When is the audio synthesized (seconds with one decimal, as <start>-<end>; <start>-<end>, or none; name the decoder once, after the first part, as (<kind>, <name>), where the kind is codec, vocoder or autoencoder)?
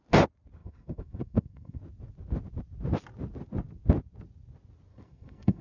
0.6-1.8 (codec, SNAC); 4.9-5.6